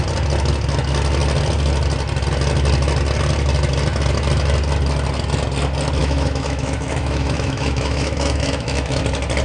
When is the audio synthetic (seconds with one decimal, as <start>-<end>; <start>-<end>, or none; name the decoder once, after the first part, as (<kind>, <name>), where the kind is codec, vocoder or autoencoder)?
6.0-9.0 (autoencoder, DAC-VAE)